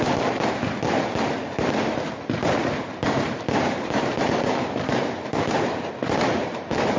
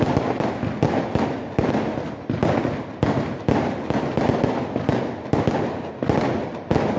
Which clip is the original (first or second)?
second